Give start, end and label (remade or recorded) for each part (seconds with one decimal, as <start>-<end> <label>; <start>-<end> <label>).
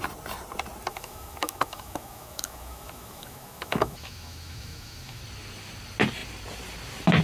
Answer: 0.0-0.9 recorded; 0.9-5.2 remade; 5.2-7.2 recorded